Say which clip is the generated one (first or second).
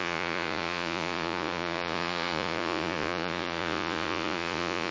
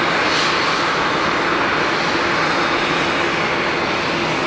first